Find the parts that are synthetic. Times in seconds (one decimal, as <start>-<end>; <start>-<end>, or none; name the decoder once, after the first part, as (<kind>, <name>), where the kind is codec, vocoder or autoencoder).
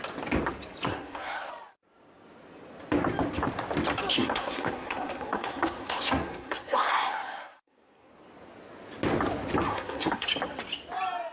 0.9-1.5 (codec, SNAC); 4.1-8.1; 9.7-10.3